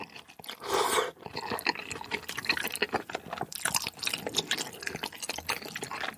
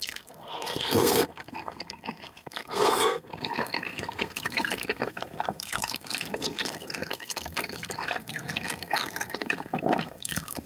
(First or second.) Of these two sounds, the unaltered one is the first